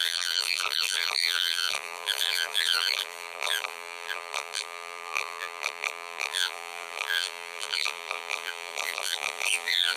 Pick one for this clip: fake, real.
fake